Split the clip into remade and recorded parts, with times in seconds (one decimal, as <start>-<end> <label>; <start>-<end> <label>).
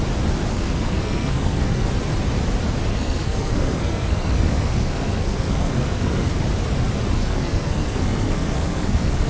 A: 0.0-0.5 recorded; 0.5-1.9 remade; 1.9-2.9 recorded; 2.9-6.4 remade; 6.4-7.2 recorded; 7.2-9.3 remade